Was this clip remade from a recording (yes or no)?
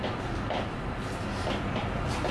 no